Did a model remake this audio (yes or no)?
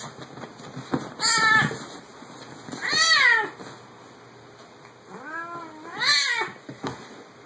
no